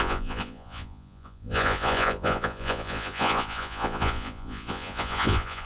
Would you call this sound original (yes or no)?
no